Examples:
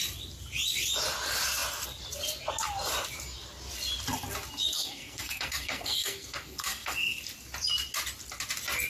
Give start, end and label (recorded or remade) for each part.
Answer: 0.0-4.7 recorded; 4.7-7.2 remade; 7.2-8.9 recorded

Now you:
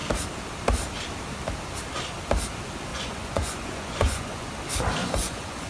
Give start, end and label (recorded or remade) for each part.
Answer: 0.0-2.9 recorded; 2.9-4.5 remade; 4.5-5.0 recorded; 5.0-5.7 remade

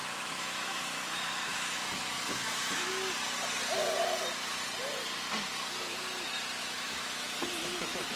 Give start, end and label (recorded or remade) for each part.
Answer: 0.0-2.9 remade; 2.9-6.6 recorded; 6.6-8.2 remade

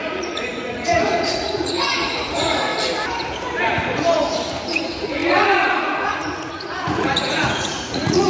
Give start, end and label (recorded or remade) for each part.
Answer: 0.0-2.7 remade; 2.7-4.6 recorded; 4.6-8.3 remade